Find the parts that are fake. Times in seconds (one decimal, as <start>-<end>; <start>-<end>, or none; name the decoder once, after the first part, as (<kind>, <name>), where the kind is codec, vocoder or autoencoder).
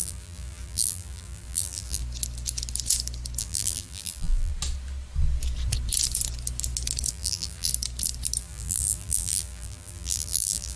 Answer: 0.0-2.0 (vocoder, BigVGAN v2); 3.4-4.5; 7.1-7.7; 8.4-10.8